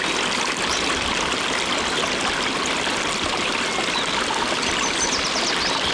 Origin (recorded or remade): recorded